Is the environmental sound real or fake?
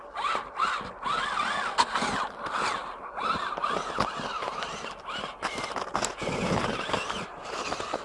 real